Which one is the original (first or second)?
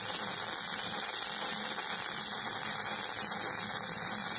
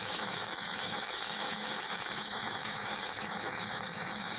first